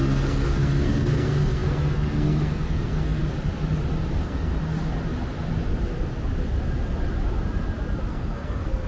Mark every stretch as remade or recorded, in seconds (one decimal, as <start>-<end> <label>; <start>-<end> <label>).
0.0-3.2 remade; 3.2-4.1 recorded; 4.1-4.5 remade; 4.5-8.1 recorded; 8.1-8.9 remade